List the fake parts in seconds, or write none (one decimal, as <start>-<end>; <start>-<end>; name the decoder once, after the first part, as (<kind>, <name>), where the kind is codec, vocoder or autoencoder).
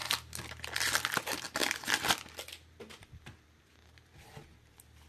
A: none